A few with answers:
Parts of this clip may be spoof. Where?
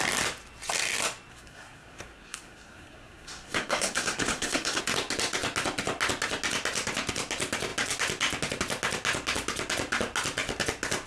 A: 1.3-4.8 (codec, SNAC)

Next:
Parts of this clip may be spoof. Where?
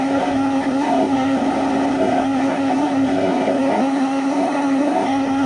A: 0.0-1.4 (codec, SNAC); 1.9-5.5